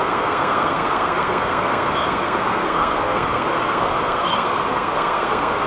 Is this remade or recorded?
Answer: remade